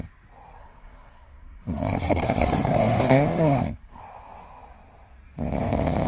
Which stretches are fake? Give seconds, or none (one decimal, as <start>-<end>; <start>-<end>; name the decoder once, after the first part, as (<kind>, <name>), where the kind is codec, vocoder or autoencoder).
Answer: 0.6-4.0 (codec, SNAC)